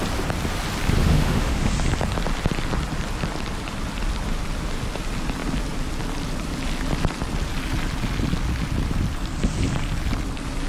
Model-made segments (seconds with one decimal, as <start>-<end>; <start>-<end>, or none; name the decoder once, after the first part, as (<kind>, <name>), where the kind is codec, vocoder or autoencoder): 1.0-1.7 (autoencoder, DAC-VAE)